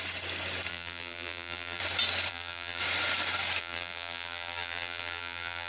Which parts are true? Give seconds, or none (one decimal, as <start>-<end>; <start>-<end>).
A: 0.0-0.7; 1.8-2.3; 2.8-3.6